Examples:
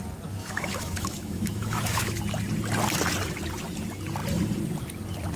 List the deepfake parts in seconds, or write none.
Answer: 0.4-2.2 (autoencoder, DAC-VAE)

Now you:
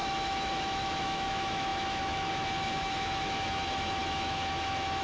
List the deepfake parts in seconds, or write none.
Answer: 0.0-5.0 (autoencoder, DAC-VAE)

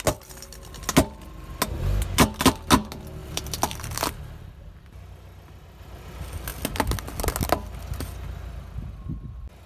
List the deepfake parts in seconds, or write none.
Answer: 3.2-4.0 (vocoder, BigVGAN v2)